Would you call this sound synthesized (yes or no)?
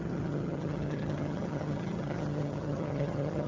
yes